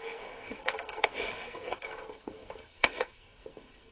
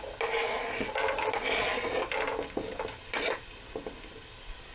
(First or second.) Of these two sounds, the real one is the second